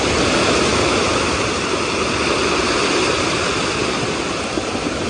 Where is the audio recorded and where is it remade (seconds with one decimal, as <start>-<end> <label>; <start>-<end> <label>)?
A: 0.0-5.1 recorded